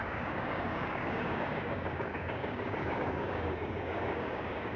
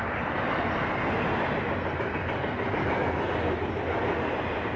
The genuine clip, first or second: second